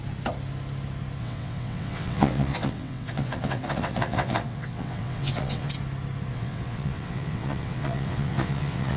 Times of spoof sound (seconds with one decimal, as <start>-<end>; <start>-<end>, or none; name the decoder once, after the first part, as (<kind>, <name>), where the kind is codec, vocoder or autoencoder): 1.2-5.7 (vocoder, WaveNeXt); 6.3-9.0